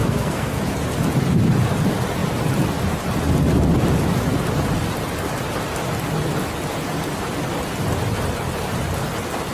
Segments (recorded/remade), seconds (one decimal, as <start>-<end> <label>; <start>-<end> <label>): 0.0-0.6 remade; 0.6-9.5 recorded